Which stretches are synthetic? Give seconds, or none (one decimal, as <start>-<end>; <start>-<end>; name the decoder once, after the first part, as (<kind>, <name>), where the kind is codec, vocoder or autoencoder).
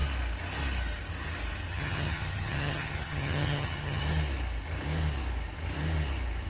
1.7-4.0 (vocoder, HiFi-GAN)